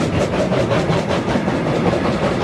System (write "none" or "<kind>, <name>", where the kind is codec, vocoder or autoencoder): none